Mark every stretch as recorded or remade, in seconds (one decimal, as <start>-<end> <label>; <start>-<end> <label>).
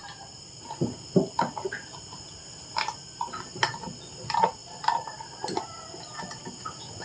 0.0-7.0 recorded